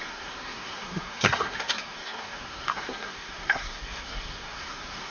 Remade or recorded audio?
remade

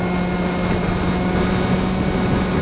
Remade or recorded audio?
recorded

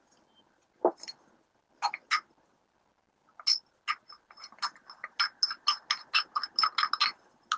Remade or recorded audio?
recorded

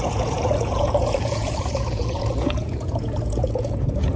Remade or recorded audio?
remade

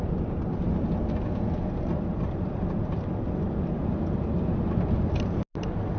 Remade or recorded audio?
recorded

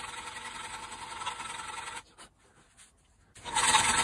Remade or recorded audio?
recorded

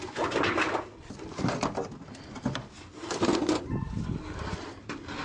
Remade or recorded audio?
recorded